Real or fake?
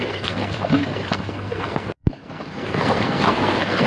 fake